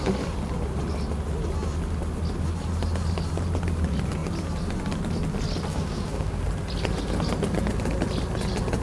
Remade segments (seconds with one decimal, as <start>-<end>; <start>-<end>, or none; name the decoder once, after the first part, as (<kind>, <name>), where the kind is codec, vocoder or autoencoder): 5.7-6.4 (codec, DAC)